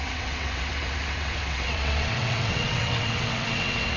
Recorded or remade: remade